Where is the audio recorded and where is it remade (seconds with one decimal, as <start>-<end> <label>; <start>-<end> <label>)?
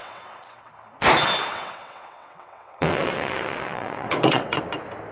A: 0.0-0.7 remade; 0.7-1.5 recorded; 1.5-4.6 remade; 4.6-5.1 recorded